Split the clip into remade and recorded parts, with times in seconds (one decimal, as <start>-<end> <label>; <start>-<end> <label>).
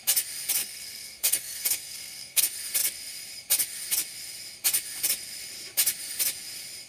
0.0-0.6 recorded; 0.6-2.4 remade; 2.4-6.9 recorded